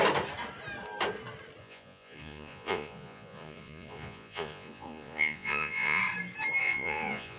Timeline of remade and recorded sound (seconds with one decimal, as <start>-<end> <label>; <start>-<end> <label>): 0.0-1.6 recorded; 1.6-6.0 remade; 6.0-6.6 recorded; 6.6-7.4 remade